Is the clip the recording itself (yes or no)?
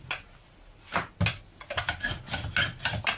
yes